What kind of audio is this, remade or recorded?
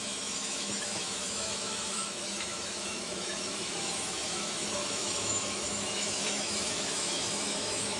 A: remade